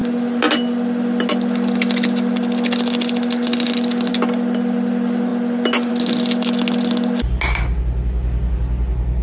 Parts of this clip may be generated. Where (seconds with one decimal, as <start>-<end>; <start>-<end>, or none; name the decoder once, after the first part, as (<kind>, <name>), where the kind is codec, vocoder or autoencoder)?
none